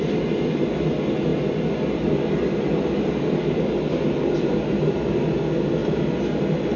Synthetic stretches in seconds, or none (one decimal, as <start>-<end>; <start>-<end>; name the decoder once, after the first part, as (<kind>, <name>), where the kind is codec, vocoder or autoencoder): none